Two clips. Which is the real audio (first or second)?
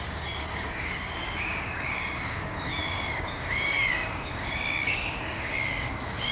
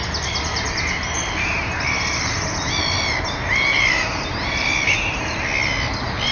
second